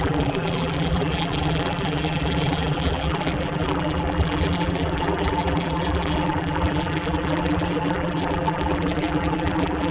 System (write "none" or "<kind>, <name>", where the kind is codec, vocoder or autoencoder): vocoder, BigVGAN v2